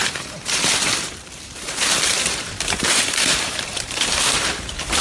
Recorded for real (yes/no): no